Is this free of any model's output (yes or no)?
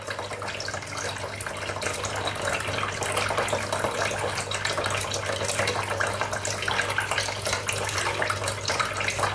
yes